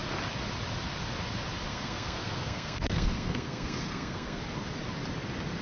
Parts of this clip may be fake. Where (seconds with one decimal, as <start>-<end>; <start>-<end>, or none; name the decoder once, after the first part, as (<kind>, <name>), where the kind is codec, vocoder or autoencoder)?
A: 1.7-4.4 (codec, SNAC)